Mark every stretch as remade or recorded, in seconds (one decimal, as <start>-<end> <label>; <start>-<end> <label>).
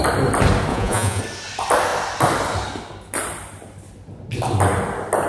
0.0-0.7 recorded; 0.7-1.2 remade; 1.2-5.3 recorded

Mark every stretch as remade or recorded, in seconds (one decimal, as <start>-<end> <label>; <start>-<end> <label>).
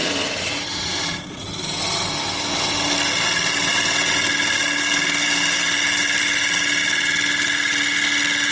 0.0-1.5 remade; 1.5-8.5 recorded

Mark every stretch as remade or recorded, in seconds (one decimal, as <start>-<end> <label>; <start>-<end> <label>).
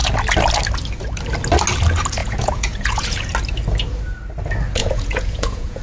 0.0-2.2 recorded; 2.2-3.3 remade; 3.3-4.8 recorded; 4.8-5.8 remade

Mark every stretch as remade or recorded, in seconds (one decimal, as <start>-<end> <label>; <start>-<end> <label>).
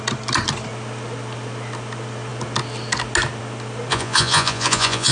0.0-3.9 recorded; 3.9-5.1 remade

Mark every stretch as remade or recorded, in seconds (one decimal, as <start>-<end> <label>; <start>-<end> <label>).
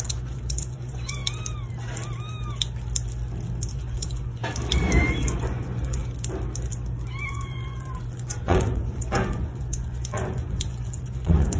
0.0-1.2 remade; 1.2-3.7 recorded; 3.7-4.4 remade; 4.4-5.2 recorded; 5.2-6.0 remade; 6.0-7.3 recorded; 7.3-11.6 remade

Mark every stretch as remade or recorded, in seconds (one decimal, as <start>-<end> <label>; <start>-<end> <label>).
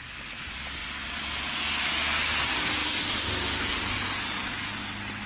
0.0-5.3 recorded